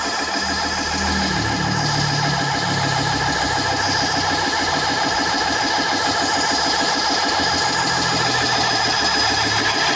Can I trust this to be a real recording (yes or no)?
yes